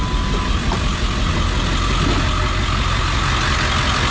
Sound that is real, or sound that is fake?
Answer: real